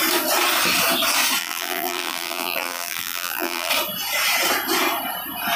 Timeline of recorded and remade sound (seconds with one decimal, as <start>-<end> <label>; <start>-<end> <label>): 0.0-1.4 recorded; 1.4-3.7 remade; 3.7-5.6 recorded